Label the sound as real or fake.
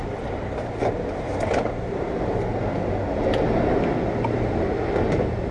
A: real